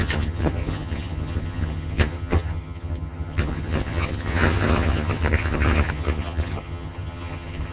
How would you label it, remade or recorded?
remade